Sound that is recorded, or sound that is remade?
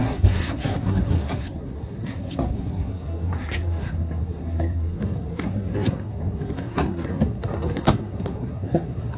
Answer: remade